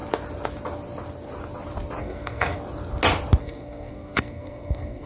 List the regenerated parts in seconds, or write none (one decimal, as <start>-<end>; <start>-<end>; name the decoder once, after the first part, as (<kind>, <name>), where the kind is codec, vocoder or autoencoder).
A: 2.0-2.6 (codec, SNAC); 3.4-5.1